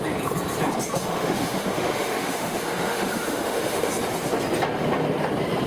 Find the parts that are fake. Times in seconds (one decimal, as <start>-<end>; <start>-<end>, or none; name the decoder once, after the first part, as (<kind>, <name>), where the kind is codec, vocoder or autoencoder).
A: 1.0-3.9 (autoencoder, DAC-VAE)